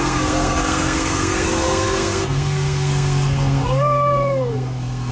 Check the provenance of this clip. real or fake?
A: fake